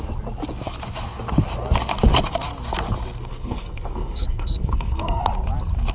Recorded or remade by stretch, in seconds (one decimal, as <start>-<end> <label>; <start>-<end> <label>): 0.0-3.2 recorded; 3.2-5.2 remade; 5.2-5.9 recorded